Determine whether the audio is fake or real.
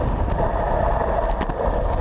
real